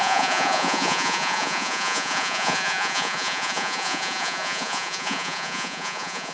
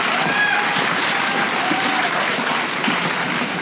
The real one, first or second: second